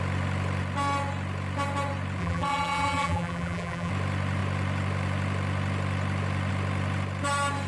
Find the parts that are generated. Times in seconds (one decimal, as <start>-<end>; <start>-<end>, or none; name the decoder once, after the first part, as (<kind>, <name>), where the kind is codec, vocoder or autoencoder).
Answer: 2.2-3.9 (vocoder, BigVGAN v2)